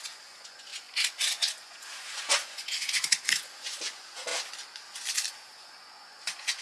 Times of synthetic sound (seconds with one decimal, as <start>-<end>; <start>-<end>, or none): 0.0-4.3; 5.3-6.6